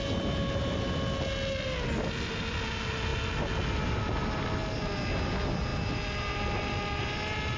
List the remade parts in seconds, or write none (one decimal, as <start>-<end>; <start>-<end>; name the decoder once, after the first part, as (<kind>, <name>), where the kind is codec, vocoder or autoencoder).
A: none